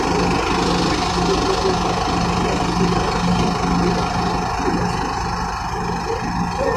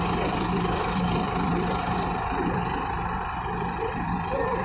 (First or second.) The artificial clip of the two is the second